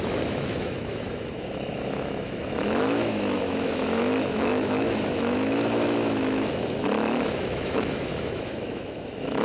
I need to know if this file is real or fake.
fake